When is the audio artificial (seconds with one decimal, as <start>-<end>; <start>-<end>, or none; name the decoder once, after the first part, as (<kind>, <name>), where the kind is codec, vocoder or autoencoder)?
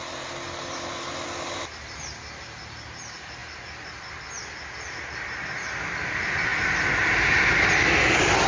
none